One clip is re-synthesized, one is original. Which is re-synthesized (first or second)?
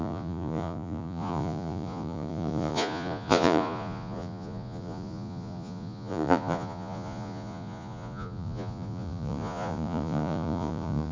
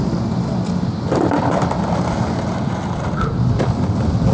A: first